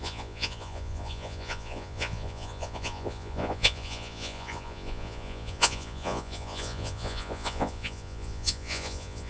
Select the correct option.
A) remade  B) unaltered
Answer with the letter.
A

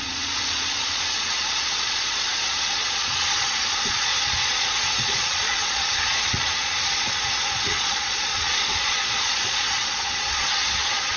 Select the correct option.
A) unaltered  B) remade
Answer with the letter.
B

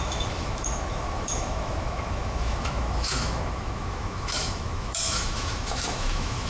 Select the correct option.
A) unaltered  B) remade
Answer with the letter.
B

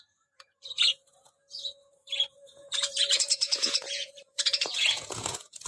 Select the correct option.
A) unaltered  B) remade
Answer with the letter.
B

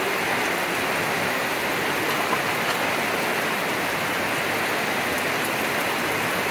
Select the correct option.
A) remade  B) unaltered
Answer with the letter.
B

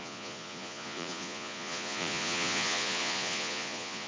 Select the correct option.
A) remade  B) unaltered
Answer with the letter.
A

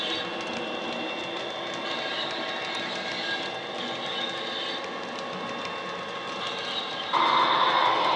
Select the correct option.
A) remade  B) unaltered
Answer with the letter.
B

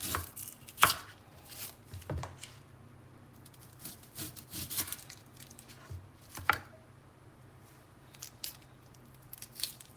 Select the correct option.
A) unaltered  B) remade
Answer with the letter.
B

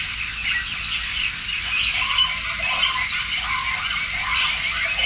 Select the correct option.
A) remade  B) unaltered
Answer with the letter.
B